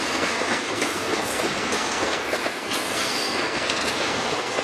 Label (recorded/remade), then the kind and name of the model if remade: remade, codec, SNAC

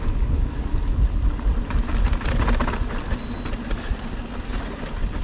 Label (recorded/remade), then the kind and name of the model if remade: recorded